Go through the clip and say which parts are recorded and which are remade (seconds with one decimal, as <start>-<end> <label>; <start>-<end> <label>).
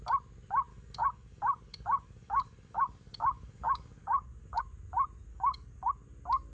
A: 0.0-0.7 recorded; 0.7-4.6 remade; 4.6-5.3 recorded; 5.3-5.9 remade; 5.9-6.5 recorded